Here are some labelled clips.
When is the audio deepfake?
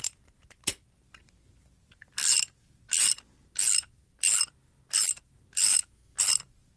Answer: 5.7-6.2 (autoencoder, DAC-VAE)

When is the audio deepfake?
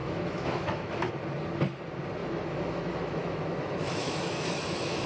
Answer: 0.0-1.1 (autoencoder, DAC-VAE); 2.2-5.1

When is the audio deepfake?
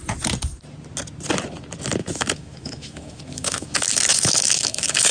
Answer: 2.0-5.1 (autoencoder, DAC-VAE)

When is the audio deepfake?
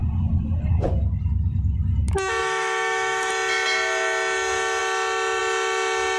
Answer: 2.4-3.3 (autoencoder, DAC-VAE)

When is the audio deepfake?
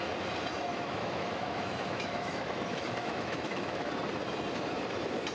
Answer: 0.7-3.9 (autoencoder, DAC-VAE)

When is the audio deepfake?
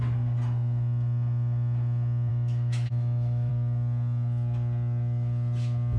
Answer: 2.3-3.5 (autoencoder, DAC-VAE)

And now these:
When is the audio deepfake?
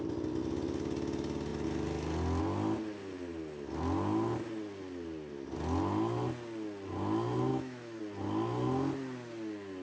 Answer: 7.5-8.0 (autoencoder, DAC-VAE)